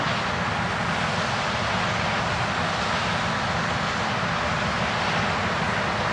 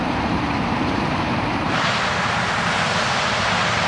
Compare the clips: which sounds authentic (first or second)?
first